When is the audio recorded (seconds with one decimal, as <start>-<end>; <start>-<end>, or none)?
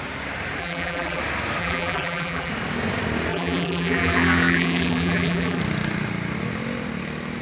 0.0-0.6; 1.2-1.6; 2.5-3.3; 5.6-7.4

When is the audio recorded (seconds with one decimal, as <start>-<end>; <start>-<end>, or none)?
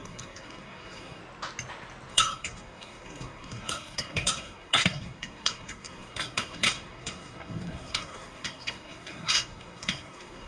1.2-2.1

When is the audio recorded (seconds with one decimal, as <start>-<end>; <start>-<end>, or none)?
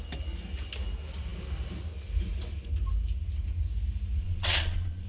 0.0-4.2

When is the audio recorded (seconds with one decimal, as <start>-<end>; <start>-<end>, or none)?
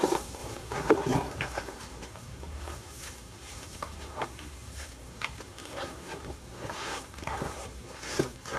none